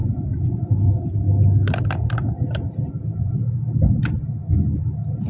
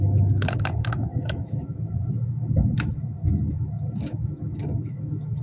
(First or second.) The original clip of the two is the first